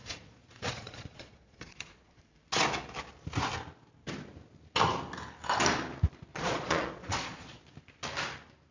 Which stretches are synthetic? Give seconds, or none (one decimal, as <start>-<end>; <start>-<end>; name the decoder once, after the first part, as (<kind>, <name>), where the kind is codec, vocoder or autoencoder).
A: 0.0-2.3 (vocoder, Vocos); 6.3-7.6